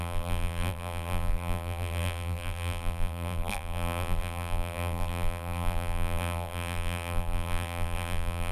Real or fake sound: fake